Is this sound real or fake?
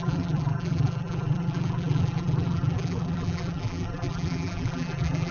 fake